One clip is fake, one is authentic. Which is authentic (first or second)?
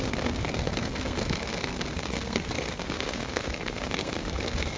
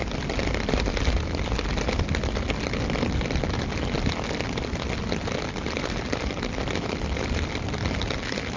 second